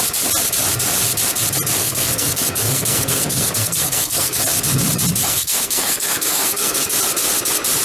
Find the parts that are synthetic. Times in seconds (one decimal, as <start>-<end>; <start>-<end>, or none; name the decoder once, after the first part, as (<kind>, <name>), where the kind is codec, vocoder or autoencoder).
1.8-4.4 (codec, SNAC); 5.2-6.9